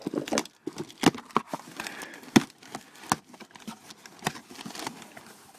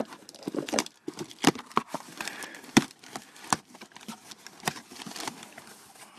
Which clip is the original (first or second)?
first